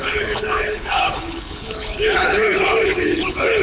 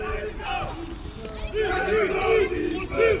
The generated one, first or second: first